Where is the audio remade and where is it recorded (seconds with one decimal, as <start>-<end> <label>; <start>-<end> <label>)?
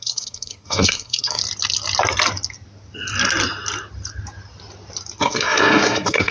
0.0-1.4 remade; 1.4-5.2 recorded; 5.2-6.3 remade